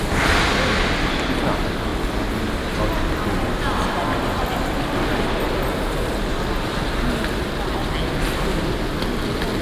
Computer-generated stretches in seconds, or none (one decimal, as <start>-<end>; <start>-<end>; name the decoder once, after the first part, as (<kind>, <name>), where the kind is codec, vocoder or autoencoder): none